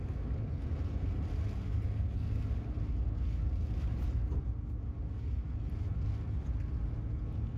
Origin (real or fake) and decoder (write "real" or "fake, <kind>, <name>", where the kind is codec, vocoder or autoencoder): real